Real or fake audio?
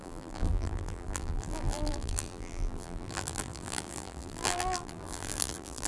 fake